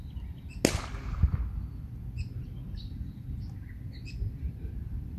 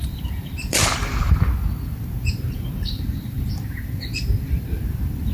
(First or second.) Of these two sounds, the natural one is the first